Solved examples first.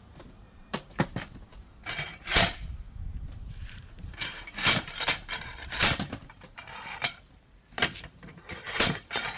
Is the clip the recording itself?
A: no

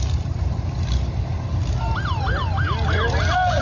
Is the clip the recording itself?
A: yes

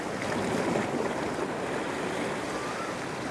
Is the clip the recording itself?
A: yes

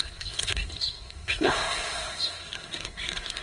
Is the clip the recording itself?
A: no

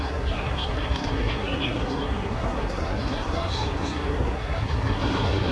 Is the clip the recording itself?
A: no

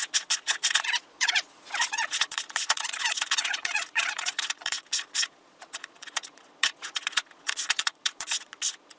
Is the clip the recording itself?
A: no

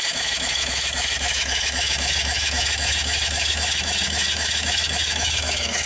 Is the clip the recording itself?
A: no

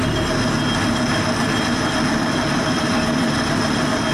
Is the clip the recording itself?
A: yes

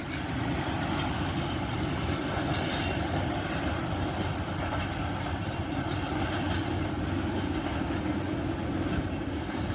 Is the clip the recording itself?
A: yes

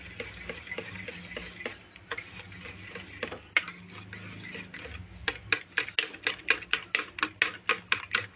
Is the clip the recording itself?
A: yes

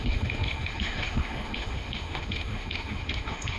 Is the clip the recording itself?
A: no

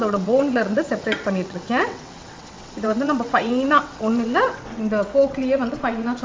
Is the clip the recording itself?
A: no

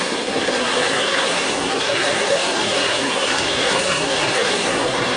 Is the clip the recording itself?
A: no